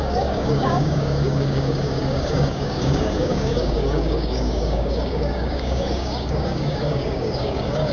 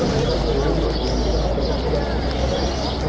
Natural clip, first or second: second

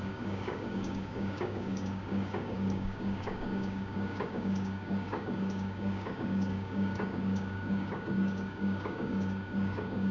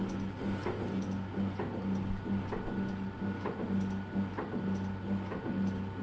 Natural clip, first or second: second